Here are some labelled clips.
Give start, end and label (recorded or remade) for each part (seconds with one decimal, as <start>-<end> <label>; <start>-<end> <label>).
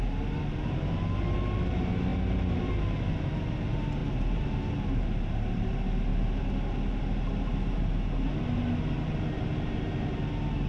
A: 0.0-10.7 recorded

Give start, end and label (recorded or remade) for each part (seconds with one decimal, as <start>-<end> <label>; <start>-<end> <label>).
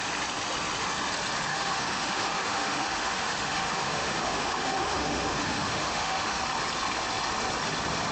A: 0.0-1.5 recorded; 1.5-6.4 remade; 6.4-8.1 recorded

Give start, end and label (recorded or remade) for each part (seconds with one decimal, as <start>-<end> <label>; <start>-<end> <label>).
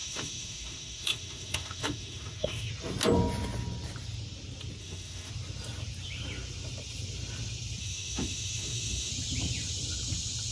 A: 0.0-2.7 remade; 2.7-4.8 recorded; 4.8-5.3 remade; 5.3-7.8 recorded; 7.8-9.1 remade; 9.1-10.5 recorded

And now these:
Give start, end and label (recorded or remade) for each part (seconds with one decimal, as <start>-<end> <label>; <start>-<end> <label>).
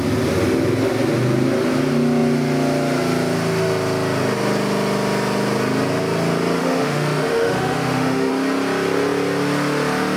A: 0.0-6.6 recorded; 6.6-8.3 remade; 8.3-10.2 recorded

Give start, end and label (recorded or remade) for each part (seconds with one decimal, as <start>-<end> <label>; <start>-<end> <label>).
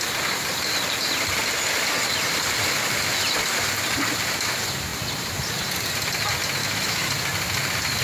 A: 0.0-6.6 recorded; 6.6-7.1 remade; 7.1-8.0 recorded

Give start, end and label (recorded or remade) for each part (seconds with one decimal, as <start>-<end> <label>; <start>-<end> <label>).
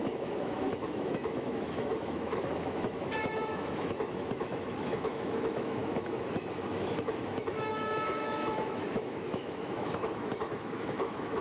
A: 0.0-11.4 remade